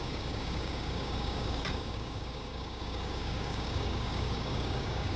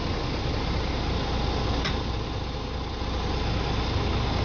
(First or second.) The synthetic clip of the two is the first